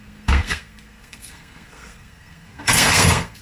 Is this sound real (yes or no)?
no